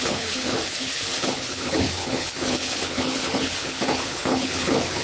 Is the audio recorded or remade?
remade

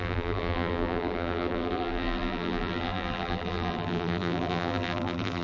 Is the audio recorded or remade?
remade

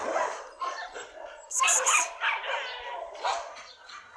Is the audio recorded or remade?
recorded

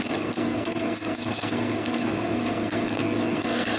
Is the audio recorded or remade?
remade